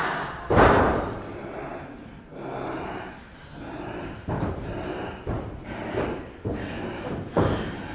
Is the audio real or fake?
fake